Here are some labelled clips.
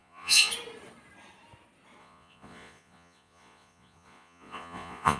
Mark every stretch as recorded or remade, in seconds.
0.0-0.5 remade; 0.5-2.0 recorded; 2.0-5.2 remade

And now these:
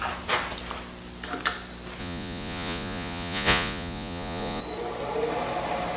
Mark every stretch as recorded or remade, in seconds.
0.0-2.0 recorded; 2.0-4.6 remade; 4.6-6.0 recorded

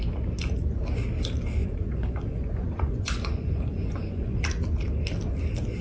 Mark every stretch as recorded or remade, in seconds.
0.0-1.6 recorded; 1.6-4.4 remade; 4.4-5.8 recorded

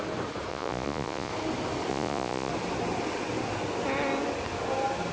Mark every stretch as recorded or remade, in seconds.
0.0-0.5 recorded; 0.5-1.3 remade; 1.3-1.9 recorded; 1.9-2.5 remade; 2.5-5.1 recorded